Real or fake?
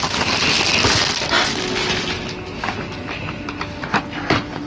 real